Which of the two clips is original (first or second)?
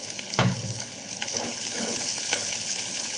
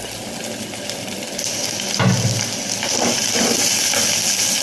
second